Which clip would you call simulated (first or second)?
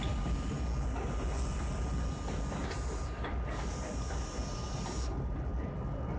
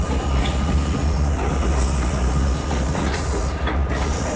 second